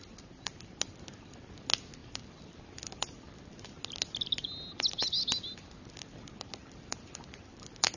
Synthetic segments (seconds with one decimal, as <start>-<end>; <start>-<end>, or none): 2.0-3.5; 6.6-8.0

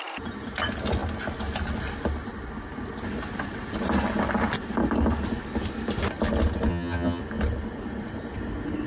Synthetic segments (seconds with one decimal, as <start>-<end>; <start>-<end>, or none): 6.7-7.2

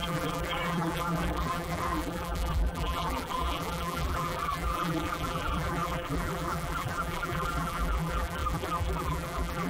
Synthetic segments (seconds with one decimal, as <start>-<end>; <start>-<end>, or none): 0.0-9.7

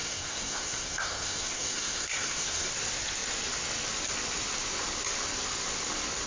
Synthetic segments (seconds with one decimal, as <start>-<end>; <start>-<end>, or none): 0.0-2.7

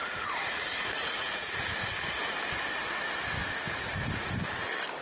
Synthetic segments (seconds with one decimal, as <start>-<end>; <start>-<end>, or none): 0.0-2.4; 3.4-4.3

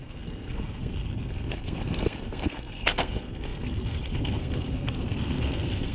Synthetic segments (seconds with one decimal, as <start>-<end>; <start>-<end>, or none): 0.0-5.9

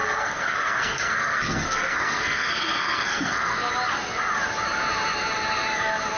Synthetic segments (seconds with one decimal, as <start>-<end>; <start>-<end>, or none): 0.0-3.7

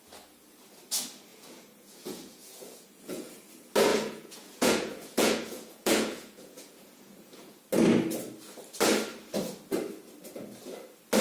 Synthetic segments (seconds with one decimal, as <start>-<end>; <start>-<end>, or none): 1.3-3.3; 3.9-7.6